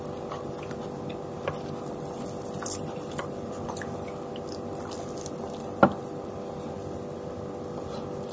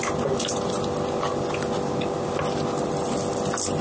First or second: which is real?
second